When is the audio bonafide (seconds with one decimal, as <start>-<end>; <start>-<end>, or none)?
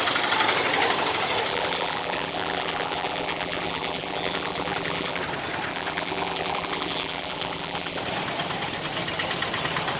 0.0-1.5; 5.2-5.7; 8.0-10.0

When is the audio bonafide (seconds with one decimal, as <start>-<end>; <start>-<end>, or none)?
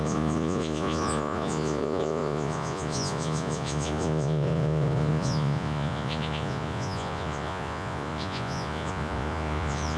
none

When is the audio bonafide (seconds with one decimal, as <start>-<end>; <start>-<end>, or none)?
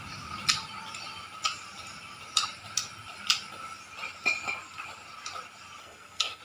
0.0-5.8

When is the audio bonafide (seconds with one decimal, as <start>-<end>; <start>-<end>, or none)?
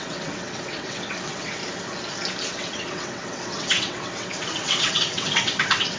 1.6-2.5